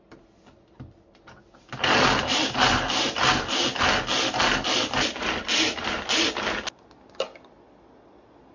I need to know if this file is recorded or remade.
recorded